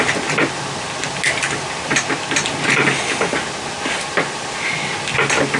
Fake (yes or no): no